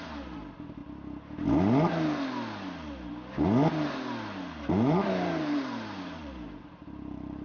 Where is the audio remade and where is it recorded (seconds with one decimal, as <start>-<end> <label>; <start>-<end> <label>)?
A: 0.0-0.8 remade; 0.8-4.7 recorded; 4.7-7.4 remade